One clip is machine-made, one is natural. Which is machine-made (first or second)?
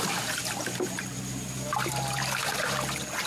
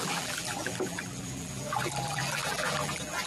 second